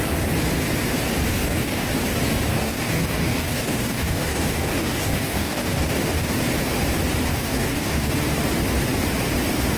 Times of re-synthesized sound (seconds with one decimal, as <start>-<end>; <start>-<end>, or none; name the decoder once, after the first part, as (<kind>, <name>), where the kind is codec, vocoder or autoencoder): 1.3-1.9 (codec, DAC); 2.5-6.3; 7.3-8.1